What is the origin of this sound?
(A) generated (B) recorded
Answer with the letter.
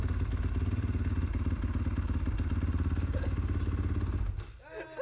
B